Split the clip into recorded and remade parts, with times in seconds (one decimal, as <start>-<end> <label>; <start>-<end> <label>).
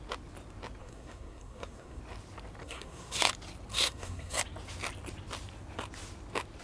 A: 0.0-0.8 recorded; 0.8-2.0 remade; 2.0-2.6 recorded; 2.6-3.3 remade; 3.3-3.7 recorded; 3.7-4.4 remade; 4.4-6.6 recorded